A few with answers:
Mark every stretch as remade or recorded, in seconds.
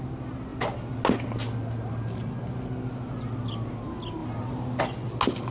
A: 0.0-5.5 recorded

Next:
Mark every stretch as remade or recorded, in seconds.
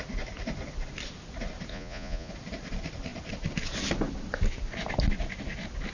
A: 0.0-1.7 recorded; 1.7-2.3 remade; 2.3-5.9 recorded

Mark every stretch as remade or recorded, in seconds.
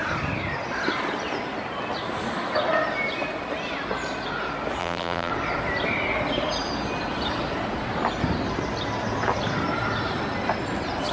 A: 0.0-4.8 recorded; 4.8-5.3 remade; 5.3-11.1 recorded